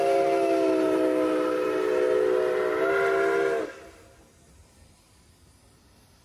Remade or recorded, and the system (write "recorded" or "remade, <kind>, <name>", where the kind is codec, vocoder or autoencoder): recorded